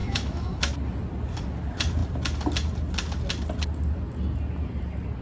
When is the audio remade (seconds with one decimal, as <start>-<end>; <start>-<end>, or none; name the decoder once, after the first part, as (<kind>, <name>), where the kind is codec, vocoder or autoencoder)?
0.0-0.6 (autoencoder, DAC-VAE)